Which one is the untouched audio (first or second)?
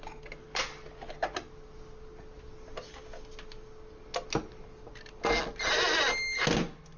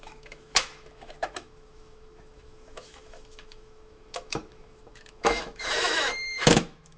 first